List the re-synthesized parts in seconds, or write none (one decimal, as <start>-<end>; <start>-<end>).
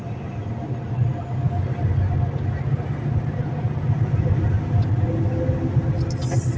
none